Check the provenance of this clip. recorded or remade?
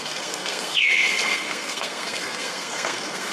remade